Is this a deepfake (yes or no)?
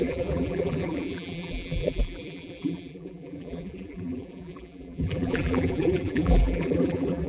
yes